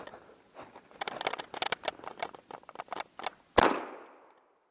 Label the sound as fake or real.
real